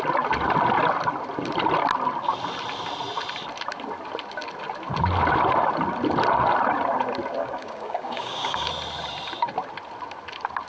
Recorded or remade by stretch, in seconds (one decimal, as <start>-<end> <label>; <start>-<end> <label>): 0.0-7.4 recorded; 7.4-8.7 remade; 8.7-10.7 recorded